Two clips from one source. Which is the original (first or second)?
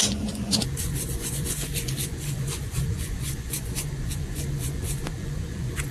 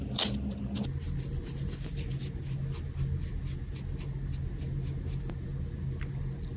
second